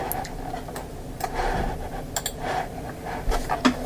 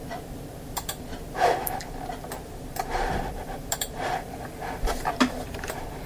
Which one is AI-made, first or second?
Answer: second